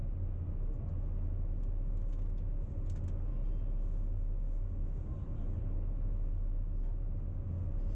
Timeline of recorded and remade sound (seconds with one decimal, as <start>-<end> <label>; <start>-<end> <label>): 0.0-5.0 recorded; 5.0-5.6 remade; 5.6-8.0 recorded